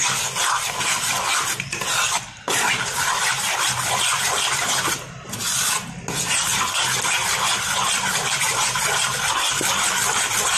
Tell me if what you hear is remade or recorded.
recorded